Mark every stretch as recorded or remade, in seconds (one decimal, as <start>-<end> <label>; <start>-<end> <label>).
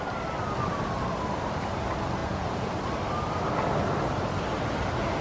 0.0-2.2 recorded; 2.2-2.7 remade; 2.7-5.2 recorded